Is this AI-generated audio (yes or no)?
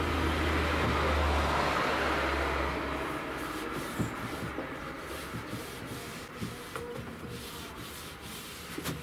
no